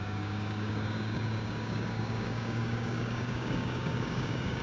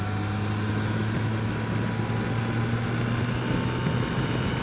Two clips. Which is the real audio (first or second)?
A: second